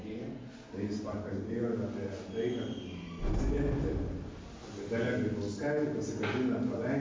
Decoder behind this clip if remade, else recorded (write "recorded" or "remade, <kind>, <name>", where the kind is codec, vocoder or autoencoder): recorded